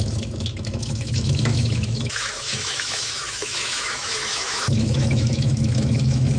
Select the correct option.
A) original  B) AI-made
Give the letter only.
B